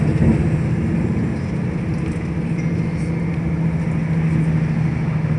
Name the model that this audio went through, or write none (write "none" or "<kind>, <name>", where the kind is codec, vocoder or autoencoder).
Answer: none